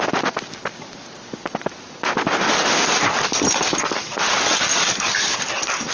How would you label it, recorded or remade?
recorded